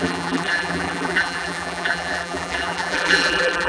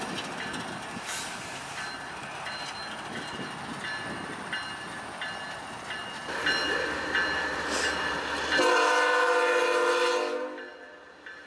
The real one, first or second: second